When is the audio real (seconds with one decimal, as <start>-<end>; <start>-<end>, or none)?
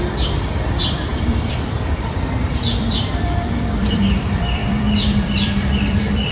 none